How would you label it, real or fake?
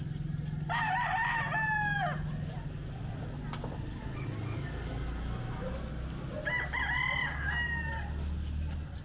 real